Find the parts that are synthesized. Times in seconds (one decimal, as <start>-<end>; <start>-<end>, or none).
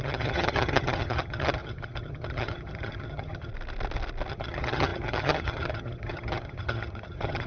0.0-3.5; 4.3-7.5